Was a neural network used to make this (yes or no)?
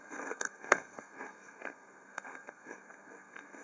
yes